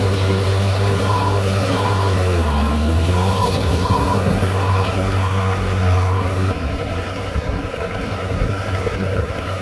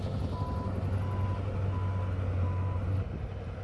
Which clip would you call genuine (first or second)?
second